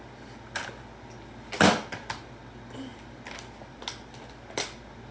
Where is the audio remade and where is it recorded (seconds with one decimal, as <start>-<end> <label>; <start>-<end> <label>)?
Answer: 0.0-5.1 recorded